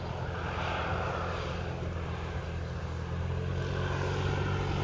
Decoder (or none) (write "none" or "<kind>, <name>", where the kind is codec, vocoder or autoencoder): none